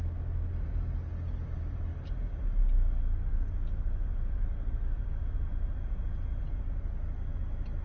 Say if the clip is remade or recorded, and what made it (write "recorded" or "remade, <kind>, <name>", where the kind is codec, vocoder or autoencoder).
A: recorded